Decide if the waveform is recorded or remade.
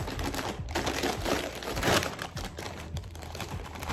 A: remade